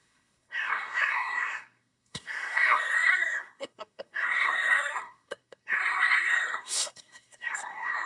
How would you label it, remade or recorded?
remade